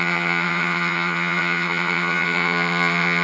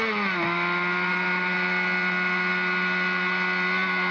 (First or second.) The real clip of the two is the second